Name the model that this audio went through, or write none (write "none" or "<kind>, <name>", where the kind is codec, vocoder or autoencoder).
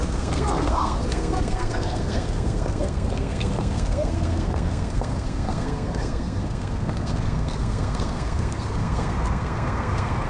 codec, SNAC